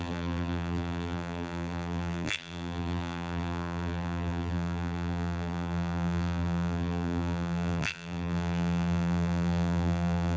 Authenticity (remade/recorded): remade